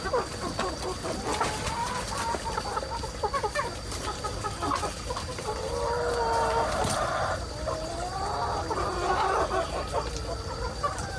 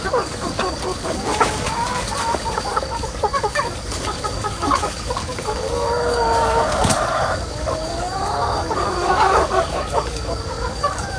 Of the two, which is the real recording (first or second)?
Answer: first